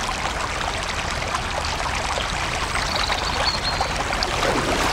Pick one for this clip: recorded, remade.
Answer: recorded